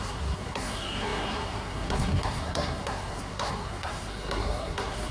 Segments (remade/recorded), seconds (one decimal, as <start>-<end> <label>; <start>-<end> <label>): 0.0-5.1 remade